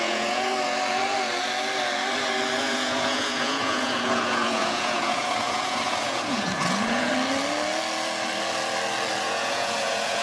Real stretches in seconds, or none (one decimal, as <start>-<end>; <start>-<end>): 0.5-2.6; 7.1-9.2